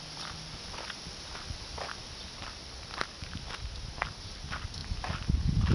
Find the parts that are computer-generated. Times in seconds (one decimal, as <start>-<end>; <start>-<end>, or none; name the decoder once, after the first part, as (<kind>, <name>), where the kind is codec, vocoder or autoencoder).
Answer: 0.0-4.8 (vocoder, BigVGAN v2); 5.3-5.7